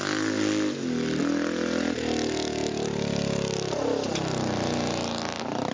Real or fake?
real